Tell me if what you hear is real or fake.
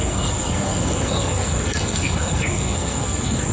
fake